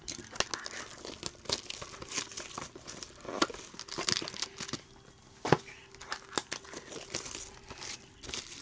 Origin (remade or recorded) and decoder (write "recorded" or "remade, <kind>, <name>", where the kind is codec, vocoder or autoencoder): recorded